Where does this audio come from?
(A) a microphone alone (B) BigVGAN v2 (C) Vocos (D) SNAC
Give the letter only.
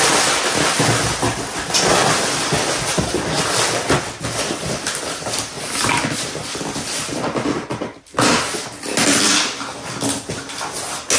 A